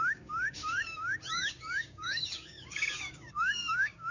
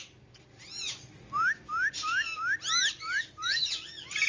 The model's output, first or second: first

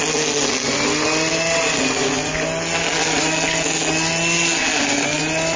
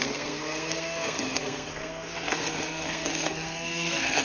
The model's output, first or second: second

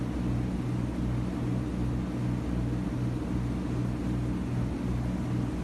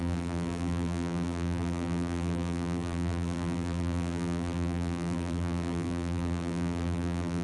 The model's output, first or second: second